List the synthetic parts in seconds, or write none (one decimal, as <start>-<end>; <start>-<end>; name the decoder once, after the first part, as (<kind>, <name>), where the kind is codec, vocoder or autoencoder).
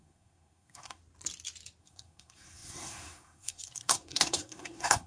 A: 0.0-1.0 (codec, SNAC); 1.8-5.1